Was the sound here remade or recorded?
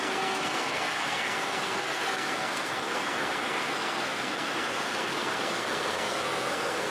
remade